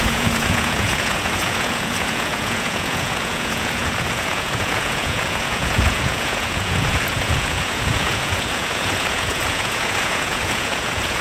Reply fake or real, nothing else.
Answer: fake